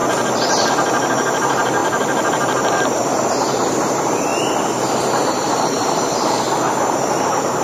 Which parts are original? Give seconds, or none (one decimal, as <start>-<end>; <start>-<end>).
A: 0.0-0.7; 4.3-5.0